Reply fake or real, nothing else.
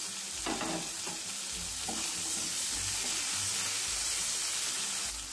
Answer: real